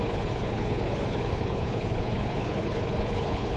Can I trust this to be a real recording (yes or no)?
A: no